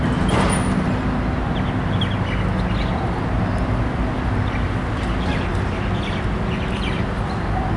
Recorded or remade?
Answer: recorded